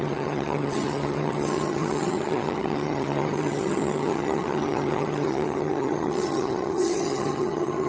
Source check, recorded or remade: remade